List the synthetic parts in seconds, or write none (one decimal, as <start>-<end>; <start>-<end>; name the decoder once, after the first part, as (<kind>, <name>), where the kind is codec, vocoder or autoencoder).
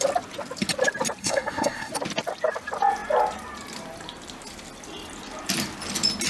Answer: 1.2-1.9 (codec, SNAC)